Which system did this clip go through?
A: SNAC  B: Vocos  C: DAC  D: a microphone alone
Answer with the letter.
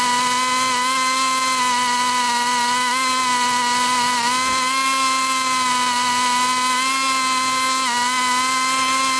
D